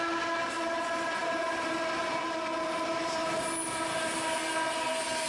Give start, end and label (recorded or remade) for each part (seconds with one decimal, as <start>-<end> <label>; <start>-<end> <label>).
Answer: 0.0-5.3 recorded